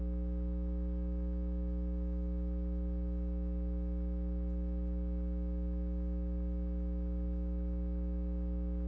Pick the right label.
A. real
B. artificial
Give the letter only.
A